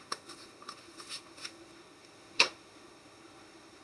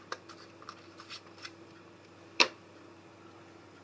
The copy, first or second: first